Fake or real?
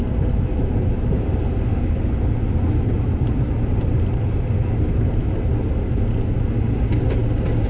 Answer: real